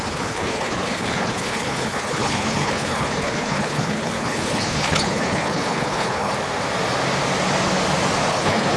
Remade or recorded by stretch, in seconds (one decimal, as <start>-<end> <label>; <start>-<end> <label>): 0.0-6.3 remade; 6.3-8.3 recorded; 8.3-8.8 remade

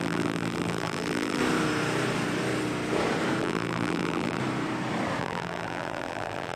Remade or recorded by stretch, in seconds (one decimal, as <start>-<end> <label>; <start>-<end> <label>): 0.0-1.4 remade; 1.4-3.4 recorded; 3.4-4.4 remade; 4.4-5.2 recorded; 5.2-6.6 remade

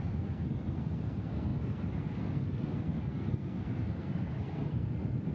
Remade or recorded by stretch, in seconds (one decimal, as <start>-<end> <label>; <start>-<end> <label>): 0.0-5.3 remade